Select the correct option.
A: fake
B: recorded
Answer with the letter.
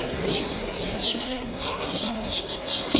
A